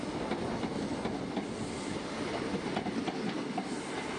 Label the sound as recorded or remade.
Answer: recorded